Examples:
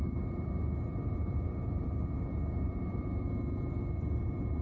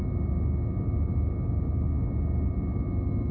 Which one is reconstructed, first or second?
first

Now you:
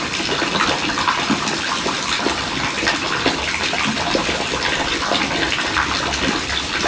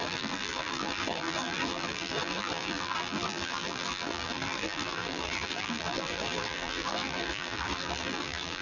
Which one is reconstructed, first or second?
second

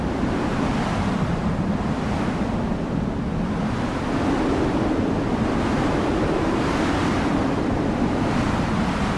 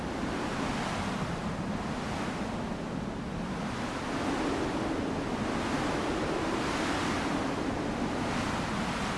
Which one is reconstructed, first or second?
first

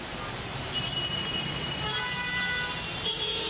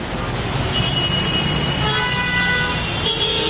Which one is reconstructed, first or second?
first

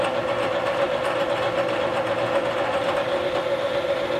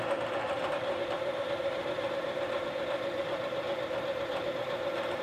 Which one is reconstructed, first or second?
second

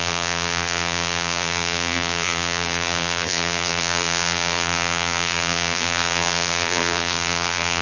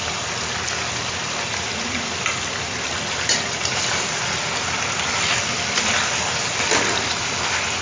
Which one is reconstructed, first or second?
first